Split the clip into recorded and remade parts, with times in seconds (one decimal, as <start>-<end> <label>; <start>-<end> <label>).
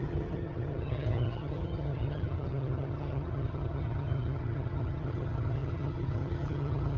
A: 0.0-7.0 remade